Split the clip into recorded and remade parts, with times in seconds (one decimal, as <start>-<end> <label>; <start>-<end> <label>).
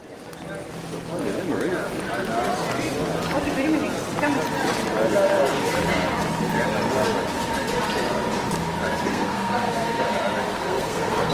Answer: 0.0-9.1 recorded; 9.1-10.1 remade; 10.1-10.5 recorded; 10.5-11.3 remade